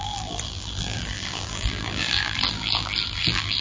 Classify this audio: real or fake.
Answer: fake